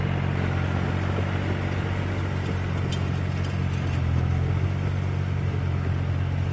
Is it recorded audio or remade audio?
recorded